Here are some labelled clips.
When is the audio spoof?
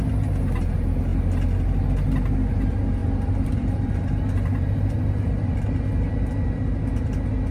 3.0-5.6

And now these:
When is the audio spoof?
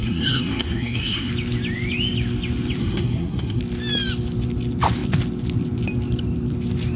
0.0-1.3; 2.8-3.6